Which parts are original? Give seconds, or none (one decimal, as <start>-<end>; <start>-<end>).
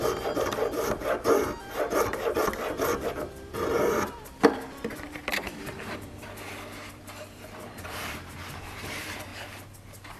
9.3-10.2